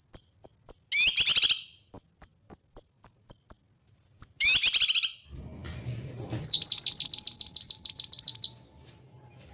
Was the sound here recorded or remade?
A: recorded